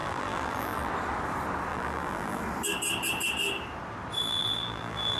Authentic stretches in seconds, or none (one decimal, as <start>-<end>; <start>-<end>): 0.9-1.7; 2.4-4.2